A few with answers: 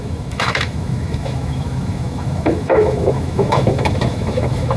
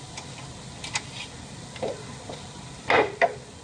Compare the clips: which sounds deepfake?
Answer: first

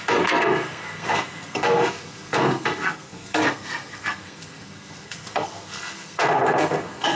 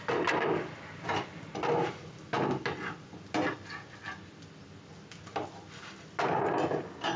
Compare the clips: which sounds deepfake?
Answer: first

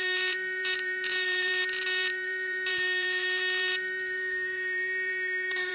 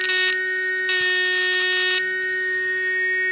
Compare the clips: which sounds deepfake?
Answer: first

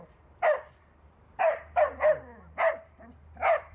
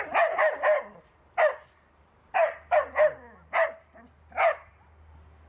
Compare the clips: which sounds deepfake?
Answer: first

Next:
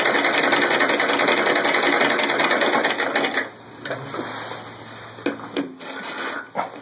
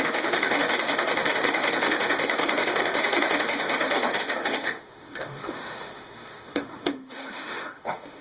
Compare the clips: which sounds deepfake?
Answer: second